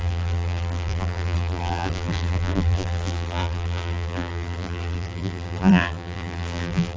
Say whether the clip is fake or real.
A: fake